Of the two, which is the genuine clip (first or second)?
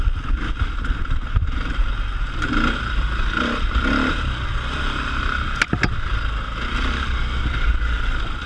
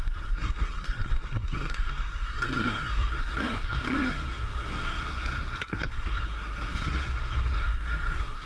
first